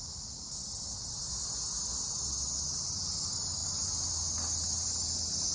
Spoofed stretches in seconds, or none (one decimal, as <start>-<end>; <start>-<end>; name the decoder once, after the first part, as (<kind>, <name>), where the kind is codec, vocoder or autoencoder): none